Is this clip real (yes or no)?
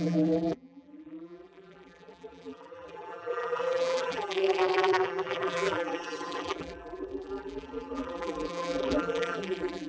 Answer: no